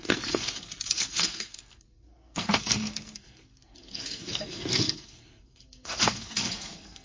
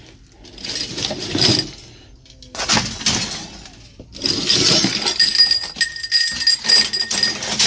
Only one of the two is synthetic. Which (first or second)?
first